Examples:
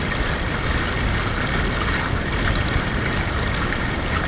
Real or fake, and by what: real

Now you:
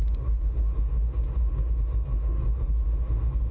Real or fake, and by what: fake, autoencoder, DAC-VAE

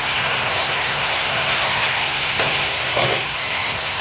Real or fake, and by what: fake, codec, SNAC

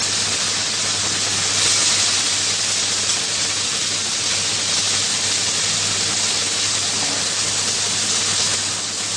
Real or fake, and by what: real